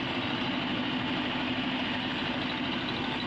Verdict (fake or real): real